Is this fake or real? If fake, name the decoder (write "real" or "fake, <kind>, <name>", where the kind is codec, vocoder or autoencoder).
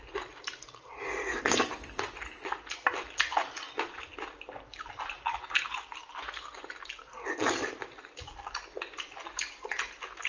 real